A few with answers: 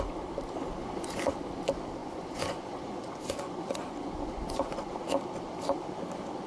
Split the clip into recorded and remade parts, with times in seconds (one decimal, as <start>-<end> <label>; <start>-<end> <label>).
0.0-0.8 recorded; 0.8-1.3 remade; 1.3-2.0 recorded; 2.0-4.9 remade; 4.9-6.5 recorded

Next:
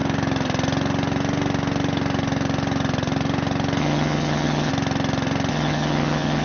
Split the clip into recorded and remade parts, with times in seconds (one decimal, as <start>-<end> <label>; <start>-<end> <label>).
0.0-3.8 recorded; 3.8-4.7 remade; 4.7-5.5 recorded; 5.5-6.4 remade

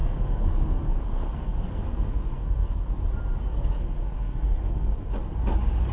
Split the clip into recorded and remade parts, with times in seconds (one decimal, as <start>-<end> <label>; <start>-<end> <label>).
0.0-2.9 remade; 2.9-3.5 recorded; 3.5-5.1 remade; 5.1-5.9 recorded

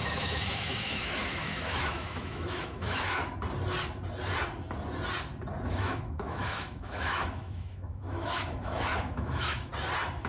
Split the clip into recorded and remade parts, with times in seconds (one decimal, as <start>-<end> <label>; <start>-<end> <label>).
0.0-3.2 remade; 3.2-5.7 recorded; 5.7-9.7 remade; 9.7-10.3 recorded

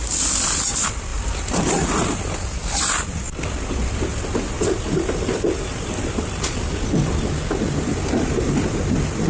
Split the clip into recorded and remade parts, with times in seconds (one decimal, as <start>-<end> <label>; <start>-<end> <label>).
0.0-9.3 remade

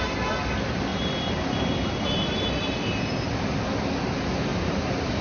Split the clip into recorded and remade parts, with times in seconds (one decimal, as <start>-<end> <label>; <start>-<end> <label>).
0.0-0.9 recorded; 0.9-3.0 remade; 3.0-4.5 recorded; 4.5-5.2 remade

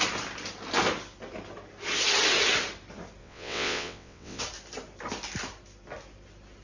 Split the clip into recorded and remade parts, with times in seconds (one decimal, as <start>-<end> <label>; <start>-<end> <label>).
0.0-3.2 recorded; 3.2-4.4 remade; 4.4-6.6 recorded

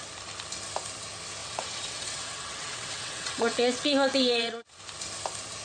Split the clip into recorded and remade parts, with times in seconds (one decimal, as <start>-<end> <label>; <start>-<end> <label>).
0.0-1.4 recorded; 1.4-4.8 remade; 4.8-5.6 recorded